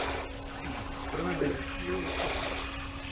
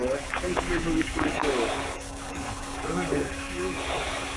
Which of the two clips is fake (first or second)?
second